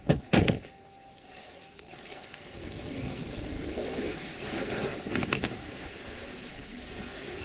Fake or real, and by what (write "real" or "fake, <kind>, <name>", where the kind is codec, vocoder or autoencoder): fake, codec, SNAC